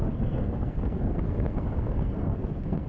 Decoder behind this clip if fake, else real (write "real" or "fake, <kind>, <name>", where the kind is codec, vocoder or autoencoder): fake, codec, SNAC